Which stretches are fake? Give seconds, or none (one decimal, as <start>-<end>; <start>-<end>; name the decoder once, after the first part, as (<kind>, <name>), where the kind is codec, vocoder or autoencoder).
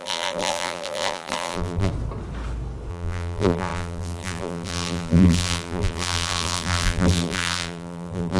0.0-1.9 (vocoder, BigVGAN v2); 2.9-8.4